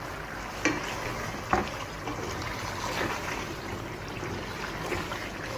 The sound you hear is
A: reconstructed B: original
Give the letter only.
B